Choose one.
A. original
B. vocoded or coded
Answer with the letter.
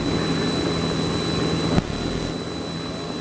A